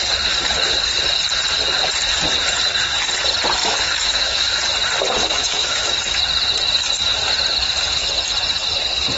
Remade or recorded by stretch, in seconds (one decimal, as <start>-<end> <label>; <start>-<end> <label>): 0.0-3.6 recorded; 3.6-4.6 remade; 4.6-5.2 recorded; 5.2-6.2 remade; 6.2-9.2 recorded